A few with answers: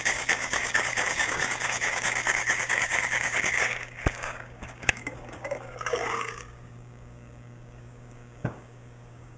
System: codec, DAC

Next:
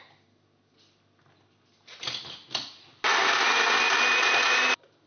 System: none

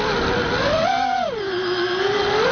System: none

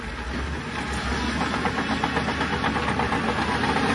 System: none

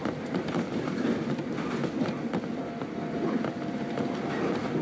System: none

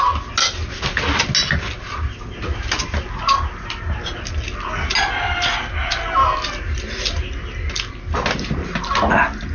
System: none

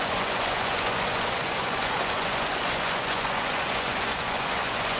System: vocoder, Vocos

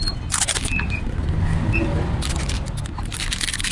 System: none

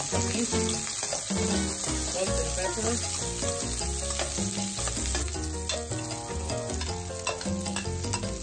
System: none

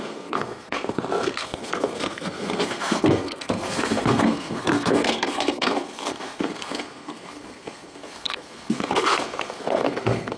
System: codec, SNAC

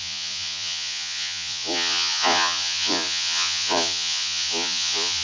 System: vocoder, Vocos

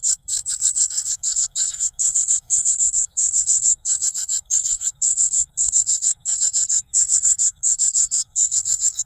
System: codec, SNAC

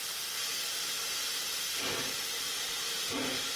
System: none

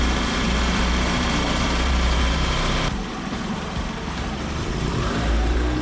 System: vocoder, BigVGAN v2